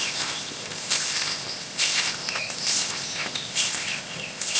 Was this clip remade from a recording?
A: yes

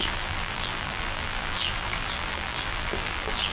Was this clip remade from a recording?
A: yes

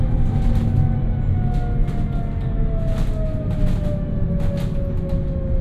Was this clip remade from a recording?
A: no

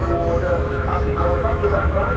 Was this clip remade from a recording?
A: yes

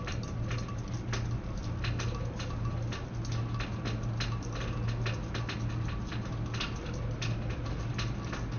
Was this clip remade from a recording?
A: no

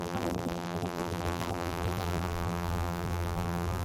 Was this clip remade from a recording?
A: yes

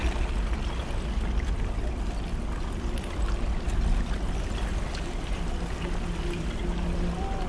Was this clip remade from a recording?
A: no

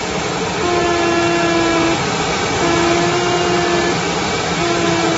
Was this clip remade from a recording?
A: no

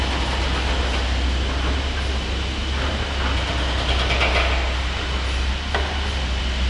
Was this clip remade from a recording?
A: no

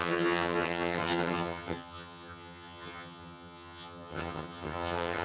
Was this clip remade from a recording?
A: yes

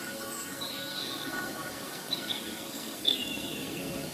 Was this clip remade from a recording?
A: yes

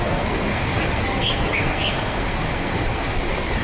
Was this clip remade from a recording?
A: yes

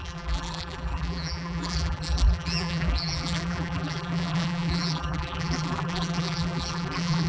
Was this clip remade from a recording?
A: yes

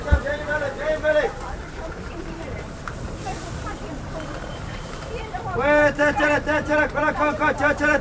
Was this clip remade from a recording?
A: yes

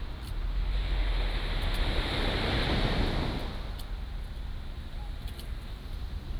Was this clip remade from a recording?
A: no